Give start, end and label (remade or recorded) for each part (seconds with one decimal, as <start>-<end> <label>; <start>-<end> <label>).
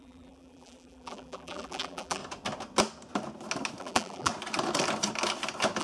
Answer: 0.0-2.2 remade; 2.2-3.8 recorded; 3.8-4.3 remade; 4.3-5.8 recorded